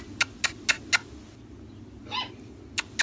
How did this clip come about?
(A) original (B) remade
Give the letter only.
A